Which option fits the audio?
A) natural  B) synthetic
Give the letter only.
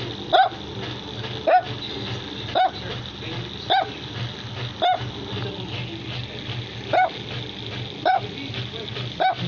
A